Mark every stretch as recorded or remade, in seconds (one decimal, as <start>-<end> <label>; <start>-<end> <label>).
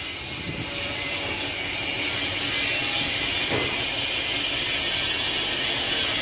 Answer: 0.0-6.2 recorded